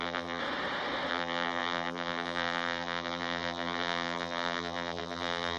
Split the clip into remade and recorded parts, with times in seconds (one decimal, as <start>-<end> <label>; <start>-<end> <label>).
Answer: 0.0-0.4 remade; 0.4-1.1 recorded; 1.1-5.6 remade